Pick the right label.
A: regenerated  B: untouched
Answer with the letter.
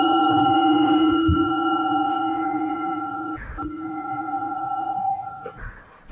A